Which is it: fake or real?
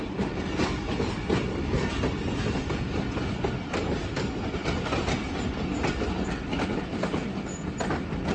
real